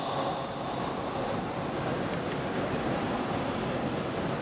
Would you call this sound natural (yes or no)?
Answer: yes